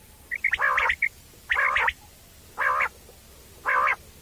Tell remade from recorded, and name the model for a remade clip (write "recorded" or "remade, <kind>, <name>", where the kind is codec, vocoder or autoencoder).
recorded